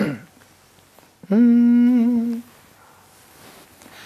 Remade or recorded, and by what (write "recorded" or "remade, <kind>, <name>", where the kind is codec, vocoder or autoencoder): recorded